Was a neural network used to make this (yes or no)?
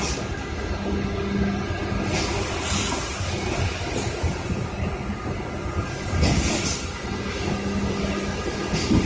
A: no